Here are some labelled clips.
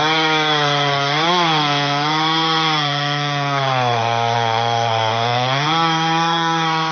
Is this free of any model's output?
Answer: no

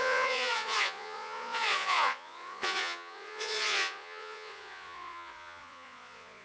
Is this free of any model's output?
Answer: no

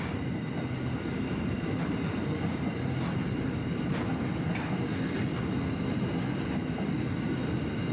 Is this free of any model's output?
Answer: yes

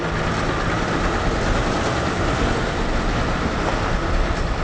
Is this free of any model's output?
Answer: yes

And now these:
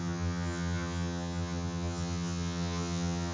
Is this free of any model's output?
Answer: no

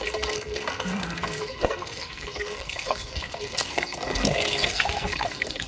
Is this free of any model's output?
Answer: no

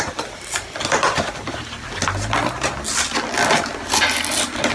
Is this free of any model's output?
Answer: yes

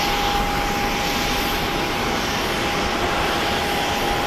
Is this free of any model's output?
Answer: yes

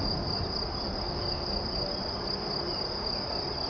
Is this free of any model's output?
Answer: yes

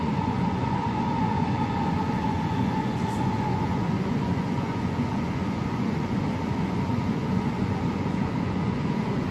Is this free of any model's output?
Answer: no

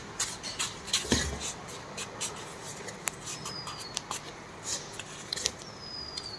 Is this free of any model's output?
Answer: yes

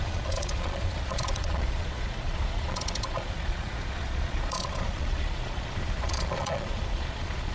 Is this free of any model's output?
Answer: no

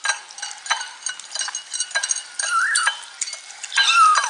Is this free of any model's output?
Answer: yes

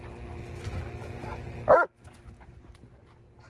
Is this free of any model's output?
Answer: yes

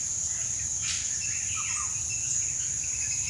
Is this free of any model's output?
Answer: yes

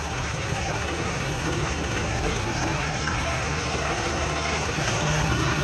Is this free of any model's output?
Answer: no